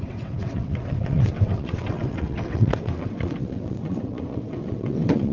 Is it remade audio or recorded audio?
remade